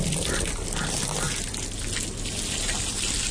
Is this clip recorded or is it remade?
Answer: recorded